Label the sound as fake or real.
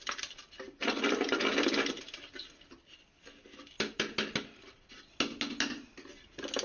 real